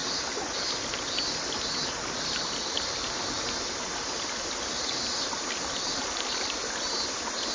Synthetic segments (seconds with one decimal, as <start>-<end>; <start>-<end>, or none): none